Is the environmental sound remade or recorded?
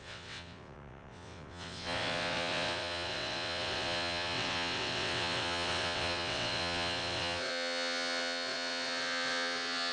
remade